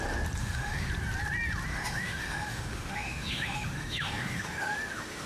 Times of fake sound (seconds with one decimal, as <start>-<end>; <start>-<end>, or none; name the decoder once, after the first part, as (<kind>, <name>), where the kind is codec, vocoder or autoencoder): 0.4-0.9 (autoencoder, DAC-VAE); 1.7-5.3